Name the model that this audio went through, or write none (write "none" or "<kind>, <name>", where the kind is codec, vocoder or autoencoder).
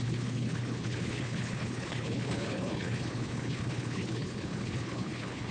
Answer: codec, HILCodec